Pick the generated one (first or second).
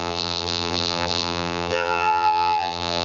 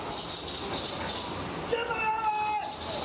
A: first